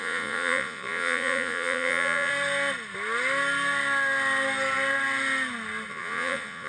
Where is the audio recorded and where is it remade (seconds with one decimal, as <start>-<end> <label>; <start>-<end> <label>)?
0.0-2.3 remade; 2.3-5.9 recorded; 5.9-6.7 remade